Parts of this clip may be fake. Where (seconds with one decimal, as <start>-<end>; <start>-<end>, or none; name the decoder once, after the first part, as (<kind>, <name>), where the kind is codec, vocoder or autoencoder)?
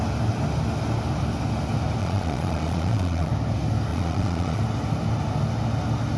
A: 2.0-3.3 (vocoder, Vocos); 3.9-4.6